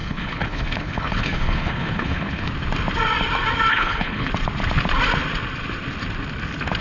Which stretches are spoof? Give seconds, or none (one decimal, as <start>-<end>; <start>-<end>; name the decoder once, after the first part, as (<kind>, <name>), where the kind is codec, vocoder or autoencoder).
0.0-2.5 (codec, HILCodec); 3.7-4.3